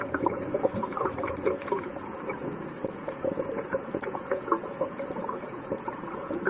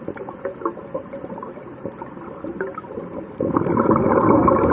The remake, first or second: first